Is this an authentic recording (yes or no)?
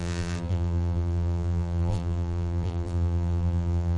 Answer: no